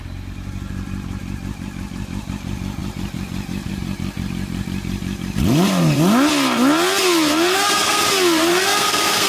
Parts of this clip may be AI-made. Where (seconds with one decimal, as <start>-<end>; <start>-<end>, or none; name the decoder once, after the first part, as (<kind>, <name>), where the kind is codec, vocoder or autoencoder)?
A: 7.5-8.0 (codec, SNAC); 8.5-9.3